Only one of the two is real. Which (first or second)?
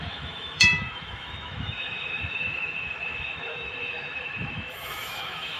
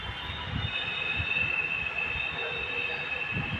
second